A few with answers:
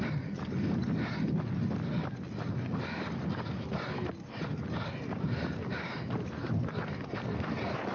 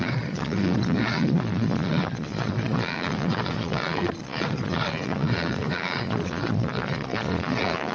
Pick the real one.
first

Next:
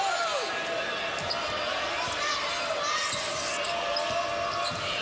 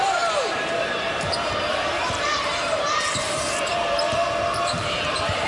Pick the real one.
first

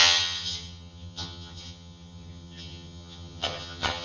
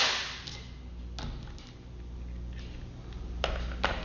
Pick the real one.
second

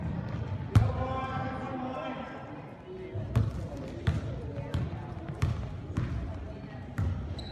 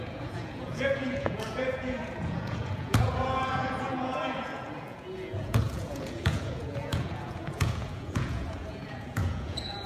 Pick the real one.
first